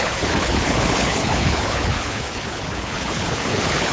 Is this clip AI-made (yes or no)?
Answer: yes